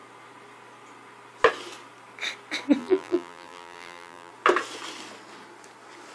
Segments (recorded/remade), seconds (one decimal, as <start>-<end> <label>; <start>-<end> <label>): 0.0-2.8 recorded; 2.8-4.3 remade; 4.3-6.1 recorded